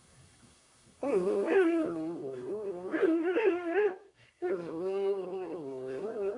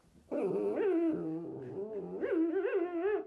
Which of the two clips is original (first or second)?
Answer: second